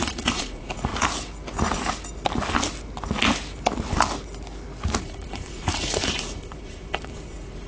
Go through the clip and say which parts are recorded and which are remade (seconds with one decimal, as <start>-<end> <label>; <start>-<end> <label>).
0.0-0.9 remade; 0.9-5.0 recorded; 5.0-7.7 remade